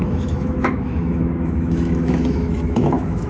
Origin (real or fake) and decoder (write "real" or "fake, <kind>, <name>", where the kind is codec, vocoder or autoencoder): fake, autoencoder, DAC-VAE